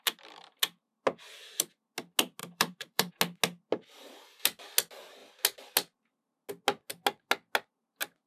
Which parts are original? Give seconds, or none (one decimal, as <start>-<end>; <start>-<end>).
0.0-2.4; 3.1-8.3